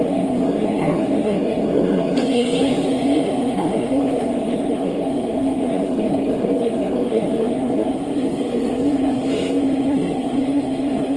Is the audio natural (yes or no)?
no